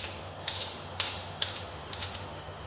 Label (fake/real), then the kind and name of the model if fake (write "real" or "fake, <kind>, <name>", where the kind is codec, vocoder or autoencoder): fake, autoencoder, DAC-VAE